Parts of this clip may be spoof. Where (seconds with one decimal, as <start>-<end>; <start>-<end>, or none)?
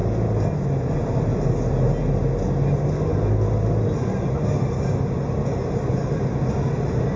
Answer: none